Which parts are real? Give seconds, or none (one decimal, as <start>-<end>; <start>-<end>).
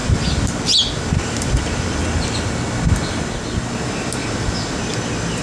2.0-3.9